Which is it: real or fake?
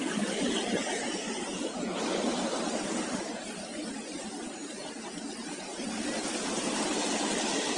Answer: real